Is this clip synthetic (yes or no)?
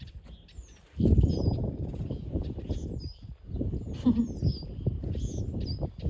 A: yes